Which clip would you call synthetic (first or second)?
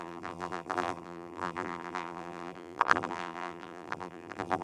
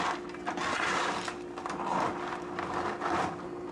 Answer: first